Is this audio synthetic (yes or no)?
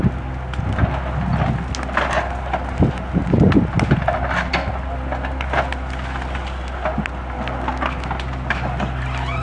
no